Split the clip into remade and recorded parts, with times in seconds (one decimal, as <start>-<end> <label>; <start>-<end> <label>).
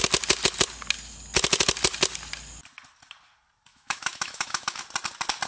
0.0-3.7 recorded; 3.7-4.8 remade; 4.8-5.5 recorded